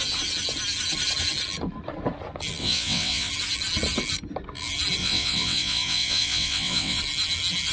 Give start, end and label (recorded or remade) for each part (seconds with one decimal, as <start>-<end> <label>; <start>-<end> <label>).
0.0-2.6 recorded; 2.6-3.3 remade; 3.3-5.0 recorded; 5.0-7.0 remade; 7.0-7.7 recorded